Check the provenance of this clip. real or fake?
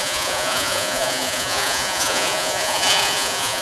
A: fake